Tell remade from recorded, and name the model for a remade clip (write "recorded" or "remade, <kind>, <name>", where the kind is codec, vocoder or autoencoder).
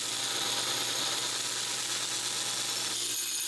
recorded